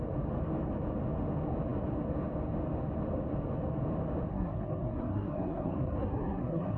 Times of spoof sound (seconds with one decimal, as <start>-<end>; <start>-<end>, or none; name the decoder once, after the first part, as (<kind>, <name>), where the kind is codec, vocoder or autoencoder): 4.3-6.8 (codec, SNAC)